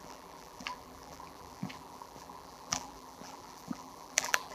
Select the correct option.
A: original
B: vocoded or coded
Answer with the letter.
B